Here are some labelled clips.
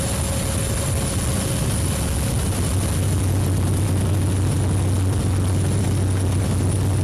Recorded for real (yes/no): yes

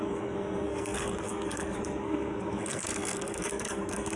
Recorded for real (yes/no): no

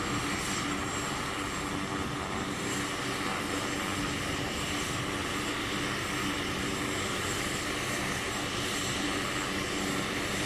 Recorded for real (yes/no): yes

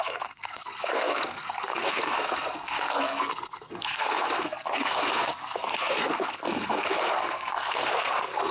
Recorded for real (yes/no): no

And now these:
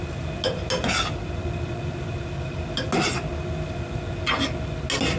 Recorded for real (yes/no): yes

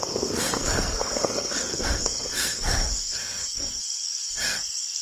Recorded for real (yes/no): no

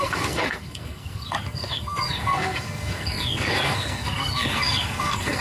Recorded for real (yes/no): no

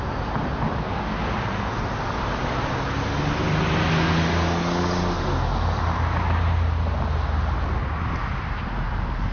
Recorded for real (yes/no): yes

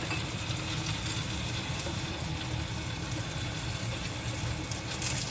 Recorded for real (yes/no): yes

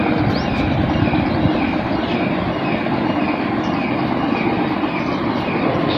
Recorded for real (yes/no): yes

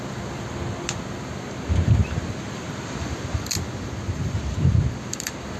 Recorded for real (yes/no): yes